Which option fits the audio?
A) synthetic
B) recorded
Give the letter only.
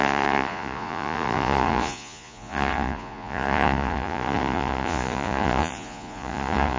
A